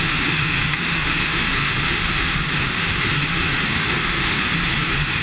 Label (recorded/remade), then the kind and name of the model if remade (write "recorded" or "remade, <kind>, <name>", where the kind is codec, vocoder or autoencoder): remade, autoencoder, DAC-VAE